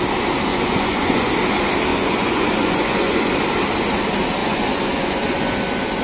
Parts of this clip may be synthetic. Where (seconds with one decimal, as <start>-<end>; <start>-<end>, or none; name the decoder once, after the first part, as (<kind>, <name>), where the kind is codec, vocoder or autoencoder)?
0.5-1.3 (vocoder, Vocos); 1.9-3.3; 4.4-5.5